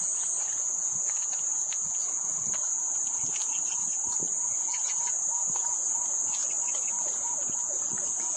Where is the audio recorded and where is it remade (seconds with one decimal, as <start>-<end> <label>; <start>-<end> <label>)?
0.0-6.4 remade; 6.4-6.9 recorded; 6.9-8.4 remade